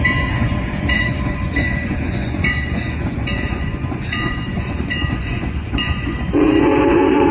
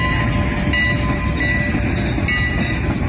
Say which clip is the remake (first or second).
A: first